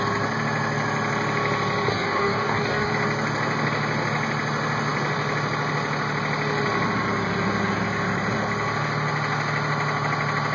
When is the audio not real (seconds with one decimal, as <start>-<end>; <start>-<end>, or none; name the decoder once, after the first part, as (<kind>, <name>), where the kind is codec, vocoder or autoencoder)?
1.9-2.9 (codec, DAC)